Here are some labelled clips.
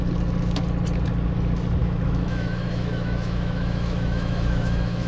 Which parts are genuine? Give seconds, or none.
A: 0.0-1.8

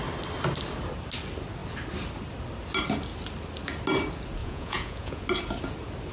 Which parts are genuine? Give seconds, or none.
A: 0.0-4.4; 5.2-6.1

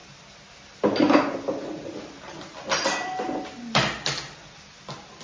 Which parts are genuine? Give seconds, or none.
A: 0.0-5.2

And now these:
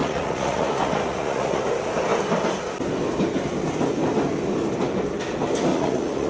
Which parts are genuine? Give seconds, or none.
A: 1.6-5.7

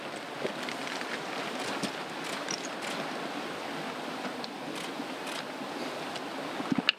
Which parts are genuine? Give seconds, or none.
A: 0.0-7.0

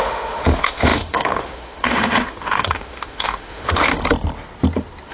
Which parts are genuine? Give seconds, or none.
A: 3.9-5.1

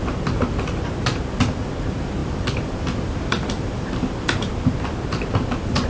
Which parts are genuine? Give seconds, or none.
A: 0.0-2.2; 4.2-5.9

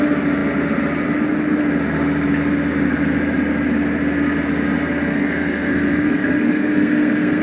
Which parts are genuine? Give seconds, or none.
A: 0.0-5.1